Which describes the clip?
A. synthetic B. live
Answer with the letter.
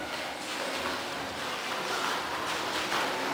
B